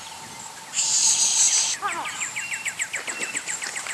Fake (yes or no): no